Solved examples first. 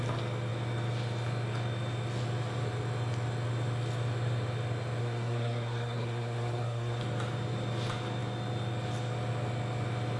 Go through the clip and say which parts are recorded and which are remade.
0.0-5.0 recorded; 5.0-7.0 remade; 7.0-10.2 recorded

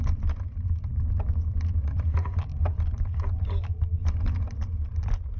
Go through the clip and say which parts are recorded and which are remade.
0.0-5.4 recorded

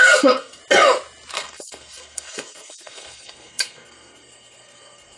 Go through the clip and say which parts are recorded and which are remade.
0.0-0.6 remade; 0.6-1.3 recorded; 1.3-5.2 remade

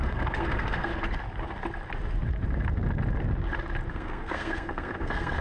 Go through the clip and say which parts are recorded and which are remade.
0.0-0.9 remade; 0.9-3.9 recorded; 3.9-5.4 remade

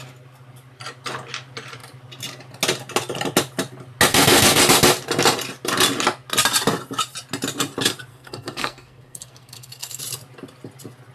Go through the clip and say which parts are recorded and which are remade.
0.0-4.1 recorded; 4.1-4.6 remade; 4.6-8.1 recorded; 8.1-10.0 remade; 10.0-11.1 recorded